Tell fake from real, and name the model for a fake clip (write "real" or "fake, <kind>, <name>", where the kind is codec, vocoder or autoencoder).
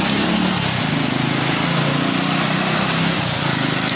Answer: real